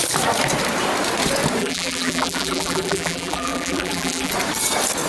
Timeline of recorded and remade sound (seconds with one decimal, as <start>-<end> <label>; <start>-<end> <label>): 0.0-1.6 recorded; 1.6-4.3 remade; 4.3-5.1 recorded